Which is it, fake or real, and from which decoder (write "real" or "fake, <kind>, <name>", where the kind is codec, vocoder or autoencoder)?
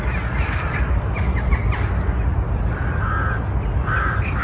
real